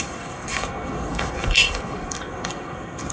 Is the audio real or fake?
fake